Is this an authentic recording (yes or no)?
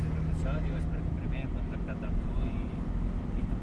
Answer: yes